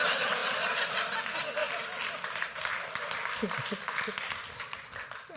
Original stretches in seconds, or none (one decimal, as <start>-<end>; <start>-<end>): 0.0-5.4